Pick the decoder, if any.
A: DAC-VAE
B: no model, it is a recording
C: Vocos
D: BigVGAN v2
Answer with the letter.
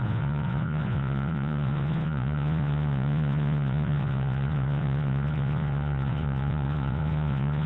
C